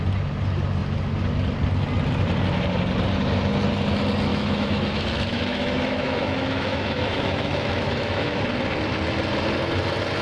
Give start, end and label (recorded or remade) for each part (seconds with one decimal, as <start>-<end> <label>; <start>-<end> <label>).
0.0-4.3 recorded; 4.3-8.4 remade; 8.4-10.2 recorded